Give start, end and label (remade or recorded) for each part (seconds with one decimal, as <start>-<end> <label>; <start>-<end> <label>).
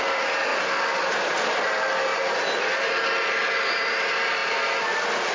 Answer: 0.0-2.1 recorded; 2.1-2.9 remade; 2.9-5.3 recorded